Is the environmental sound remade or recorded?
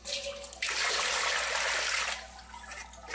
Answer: recorded